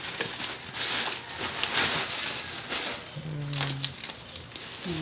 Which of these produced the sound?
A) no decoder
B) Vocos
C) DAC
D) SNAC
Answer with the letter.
A